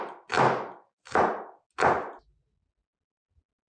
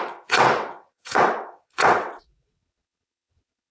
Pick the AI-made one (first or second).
second